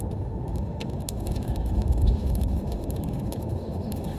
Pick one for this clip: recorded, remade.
remade